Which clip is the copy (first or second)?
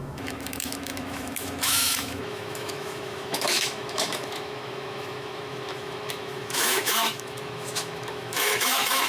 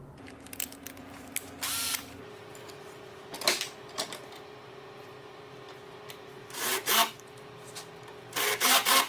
first